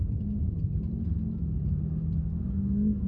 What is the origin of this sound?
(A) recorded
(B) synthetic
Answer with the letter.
A